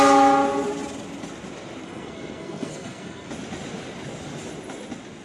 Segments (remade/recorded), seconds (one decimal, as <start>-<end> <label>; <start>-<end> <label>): 0.0-1.8 recorded; 1.8-3.3 remade; 3.3-5.2 recorded